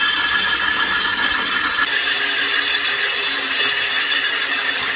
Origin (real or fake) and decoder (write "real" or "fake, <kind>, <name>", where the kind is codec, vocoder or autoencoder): real